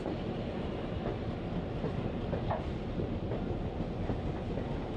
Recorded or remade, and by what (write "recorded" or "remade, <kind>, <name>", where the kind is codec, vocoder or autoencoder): recorded